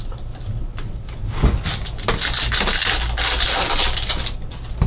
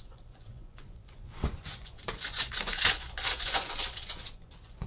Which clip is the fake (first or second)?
second